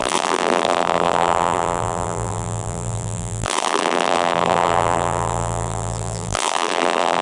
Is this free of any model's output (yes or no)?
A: no